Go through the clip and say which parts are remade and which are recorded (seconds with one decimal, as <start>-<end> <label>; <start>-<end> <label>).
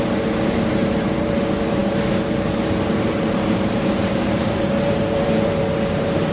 0.0-6.3 remade